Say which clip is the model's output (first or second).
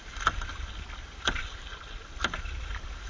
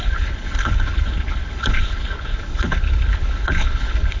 second